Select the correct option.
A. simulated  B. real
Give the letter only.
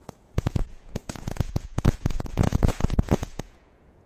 A